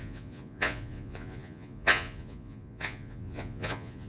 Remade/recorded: remade